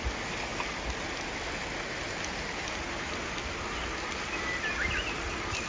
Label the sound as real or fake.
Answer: real